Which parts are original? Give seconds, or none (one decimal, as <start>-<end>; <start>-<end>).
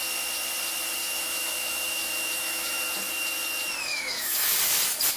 0.0-1.0; 2.8-3.9; 4.6-5.2